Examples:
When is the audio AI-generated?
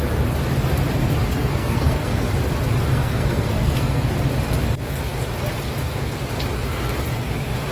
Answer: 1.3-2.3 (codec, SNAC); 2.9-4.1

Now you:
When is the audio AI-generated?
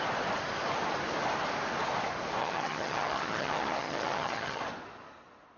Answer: 2.4-4.6 (vocoder, HiFi-GAN)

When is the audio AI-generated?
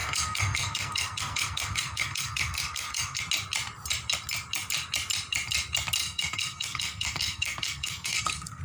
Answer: 0.0-3.2 (codec, SNAC); 6.0-8.6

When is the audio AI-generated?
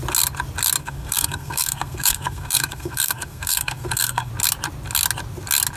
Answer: 0.8-4.3 (codec, SNAC)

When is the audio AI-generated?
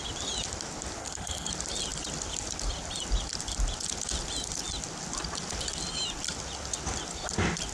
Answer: 1.0-1.5 (codec, SNAC)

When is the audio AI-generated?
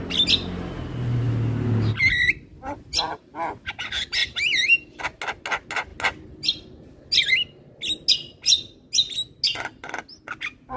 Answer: 4.2-5.0 (vocoder, BigVGAN v2)